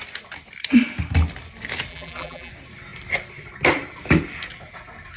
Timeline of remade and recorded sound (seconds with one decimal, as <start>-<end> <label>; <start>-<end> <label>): 0.0-1.9 recorded; 1.9-2.5 remade; 2.5-5.2 recorded